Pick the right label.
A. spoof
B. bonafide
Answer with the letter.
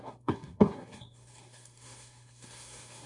A